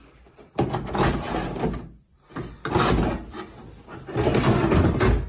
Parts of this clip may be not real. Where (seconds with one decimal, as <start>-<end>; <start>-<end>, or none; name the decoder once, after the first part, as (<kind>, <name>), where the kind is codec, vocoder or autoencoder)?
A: none